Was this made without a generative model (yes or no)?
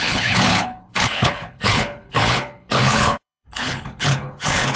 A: no